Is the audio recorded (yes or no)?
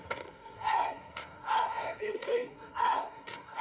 no